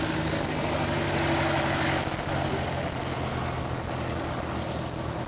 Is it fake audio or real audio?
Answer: real